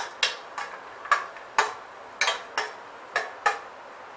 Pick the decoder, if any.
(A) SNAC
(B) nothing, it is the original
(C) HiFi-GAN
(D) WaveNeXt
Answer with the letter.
B